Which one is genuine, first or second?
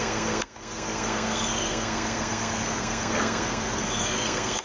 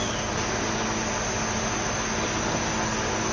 second